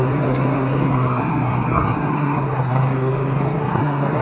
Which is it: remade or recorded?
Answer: remade